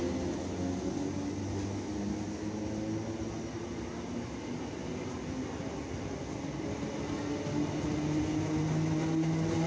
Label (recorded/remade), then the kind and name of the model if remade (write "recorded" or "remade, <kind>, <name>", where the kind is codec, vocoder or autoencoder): recorded